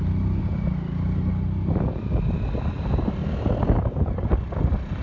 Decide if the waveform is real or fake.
real